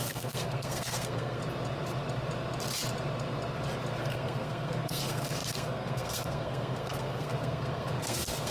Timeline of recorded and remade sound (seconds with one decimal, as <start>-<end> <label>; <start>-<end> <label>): 0.0-1.4 remade; 1.4-4.0 recorded; 4.0-8.5 remade